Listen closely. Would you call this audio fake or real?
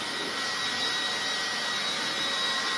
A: real